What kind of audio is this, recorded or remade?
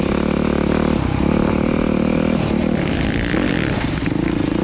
recorded